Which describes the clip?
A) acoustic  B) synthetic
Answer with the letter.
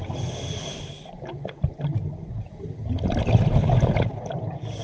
A